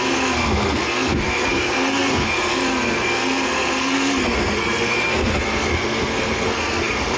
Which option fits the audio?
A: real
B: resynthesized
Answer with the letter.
B